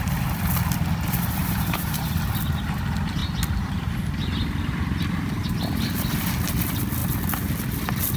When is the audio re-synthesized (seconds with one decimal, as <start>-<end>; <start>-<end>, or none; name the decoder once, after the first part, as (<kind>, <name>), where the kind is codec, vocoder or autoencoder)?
1.4-2.1 (vocoder, BigVGAN v2)